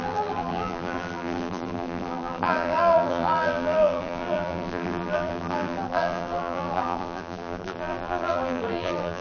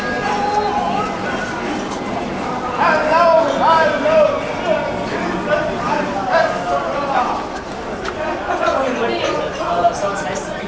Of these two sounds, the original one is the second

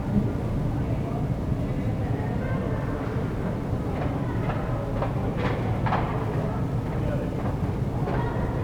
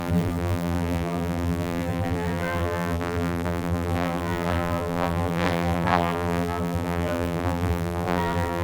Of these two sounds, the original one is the first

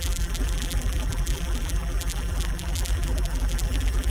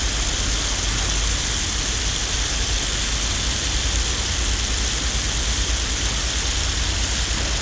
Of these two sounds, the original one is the second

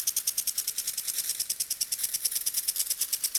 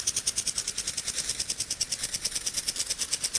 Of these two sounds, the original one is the second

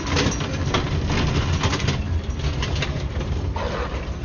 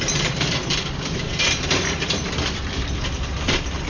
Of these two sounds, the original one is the first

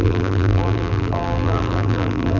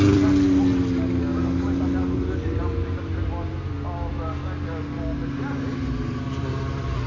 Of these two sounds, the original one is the second